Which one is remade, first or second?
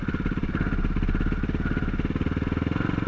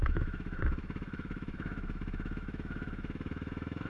second